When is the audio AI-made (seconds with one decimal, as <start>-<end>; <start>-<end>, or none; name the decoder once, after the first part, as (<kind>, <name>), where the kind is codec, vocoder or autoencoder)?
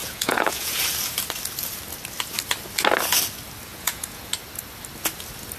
0.0-0.8 (vocoder, Vocos); 3.7-4.3